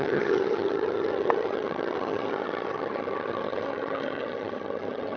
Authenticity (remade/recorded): remade